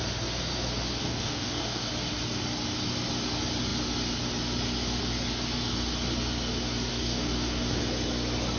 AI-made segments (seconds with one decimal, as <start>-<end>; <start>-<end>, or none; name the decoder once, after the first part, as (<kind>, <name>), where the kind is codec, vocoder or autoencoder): 1.0-1.9 (codec, DAC); 6.9-7.8